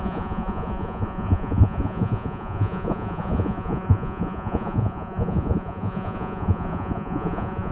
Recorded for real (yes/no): no